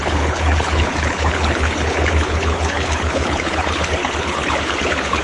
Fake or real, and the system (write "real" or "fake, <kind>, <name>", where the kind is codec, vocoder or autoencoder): fake, codec, HILCodec